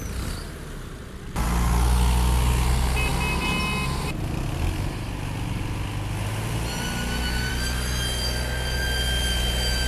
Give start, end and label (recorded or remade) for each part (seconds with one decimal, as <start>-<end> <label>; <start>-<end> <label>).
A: 0.0-9.9 recorded